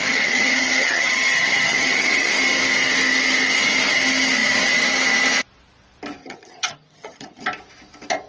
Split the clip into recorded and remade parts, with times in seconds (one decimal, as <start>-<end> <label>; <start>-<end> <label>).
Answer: 0.0-2.3 remade; 2.3-6.2 recorded; 6.2-7.4 remade; 7.4-8.3 recorded